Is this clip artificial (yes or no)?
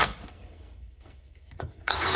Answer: yes